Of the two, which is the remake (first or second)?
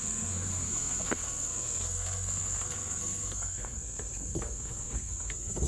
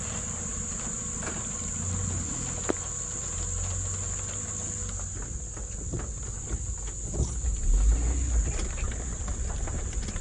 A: first